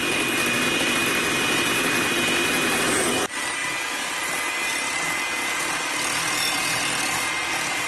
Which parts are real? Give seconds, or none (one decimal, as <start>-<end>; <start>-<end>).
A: 0.0-7.9